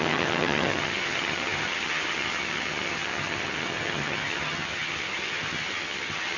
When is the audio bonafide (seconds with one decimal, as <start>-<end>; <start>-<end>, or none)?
none